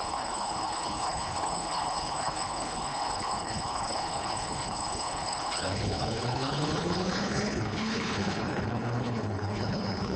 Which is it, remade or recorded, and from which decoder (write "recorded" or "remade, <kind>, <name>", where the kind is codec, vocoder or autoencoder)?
remade, codec, HILCodec